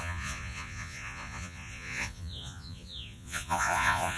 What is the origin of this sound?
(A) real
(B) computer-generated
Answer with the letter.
B